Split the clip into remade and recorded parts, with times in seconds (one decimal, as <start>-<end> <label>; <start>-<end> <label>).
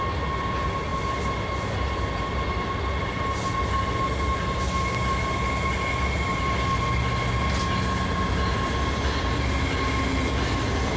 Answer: 0.0-11.0 recorded